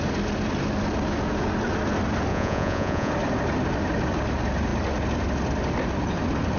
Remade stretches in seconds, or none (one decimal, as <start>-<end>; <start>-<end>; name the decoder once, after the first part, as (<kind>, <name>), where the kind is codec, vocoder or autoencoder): 2.3-3.1 (vocoder, Vocos)